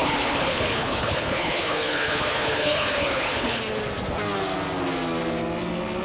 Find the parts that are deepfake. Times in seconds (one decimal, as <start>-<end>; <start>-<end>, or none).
0.0-3.6